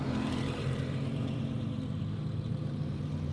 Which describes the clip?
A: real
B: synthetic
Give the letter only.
B